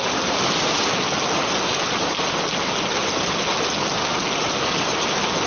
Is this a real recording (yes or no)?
yes